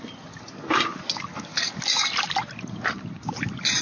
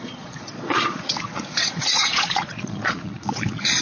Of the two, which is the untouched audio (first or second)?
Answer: first